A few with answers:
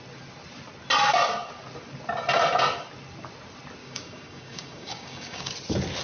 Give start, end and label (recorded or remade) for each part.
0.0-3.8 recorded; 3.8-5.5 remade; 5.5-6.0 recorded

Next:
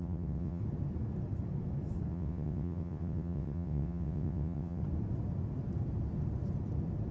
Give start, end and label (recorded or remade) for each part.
0.0-0.6 remade; 0.6-2.1 recorded; 2.1-4.8 remade; 4.8-7.1 recorded

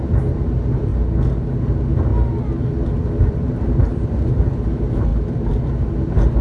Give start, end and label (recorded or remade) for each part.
0.0-0.9 remade; 0.9-1.6 recorded; 1.6-2.1 remade; 2.1-3.3 recorded; 3.3-5.1 remade; 5.1-5.8 recorded; 5.8-6.4 remade

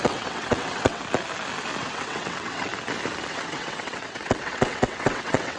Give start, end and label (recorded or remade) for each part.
0.0-1.0 remade; 1.0-1.8 recorded; 1.8-2.7 remade; 2.7-3.3 recorded; 3.3-5.6 remade

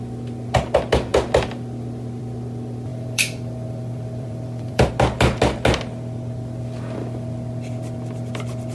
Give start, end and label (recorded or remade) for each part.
0.0-2.9 recorded; 2.9-4.9 remade; 4.9-8.7 recorded

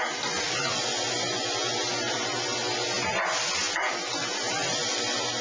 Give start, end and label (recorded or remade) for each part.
0.0-5.4 recorded